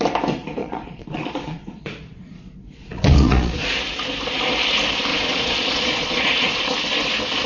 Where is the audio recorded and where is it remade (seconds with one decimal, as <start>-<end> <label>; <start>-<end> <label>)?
0.0-0.6 recorded; 0.6-3.6 remade; 3.6-5.1 recorded; 5.1-6.6 remade; 6.6-7.5 recorded

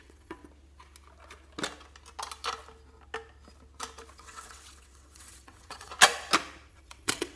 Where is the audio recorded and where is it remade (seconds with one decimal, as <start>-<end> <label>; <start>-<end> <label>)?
0.0-0.4 remade; 0.4-4.1 recorded; 4.1-5.9 remade; 5.9-6.7 recorded; 6.7-7.4 remade

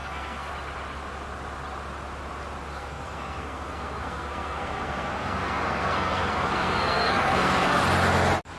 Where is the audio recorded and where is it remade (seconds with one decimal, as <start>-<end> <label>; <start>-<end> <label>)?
0.0-0.5 remade; 0.5-2.7 recorded; 2.7-7.8 remade; 7.8-8.6 recorded

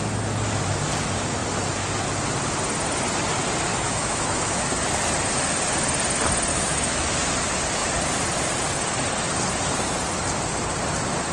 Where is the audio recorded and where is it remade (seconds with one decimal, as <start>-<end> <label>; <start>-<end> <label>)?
0.0-3.7 recorded; 3.7-4.7 remade; 4.7-6.5 recorded; 6.5-7.3 remade; 7.3-11.3 recorded